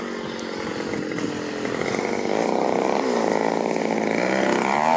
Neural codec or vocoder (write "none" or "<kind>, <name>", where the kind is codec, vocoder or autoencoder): none